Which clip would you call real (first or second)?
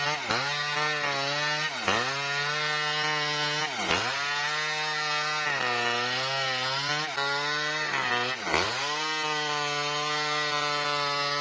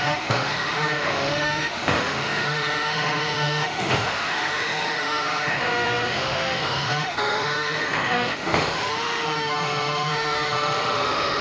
first